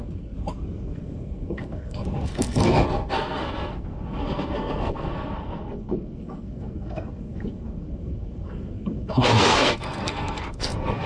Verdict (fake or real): fake